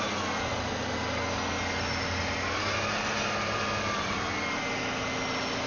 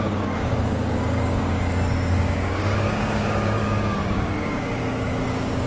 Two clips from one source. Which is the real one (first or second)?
first